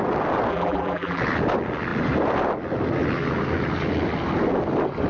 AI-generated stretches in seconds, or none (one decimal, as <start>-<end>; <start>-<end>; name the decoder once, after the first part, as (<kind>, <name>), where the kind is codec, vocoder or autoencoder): 0.5-1.2 (vocoder, BigVGAN v2)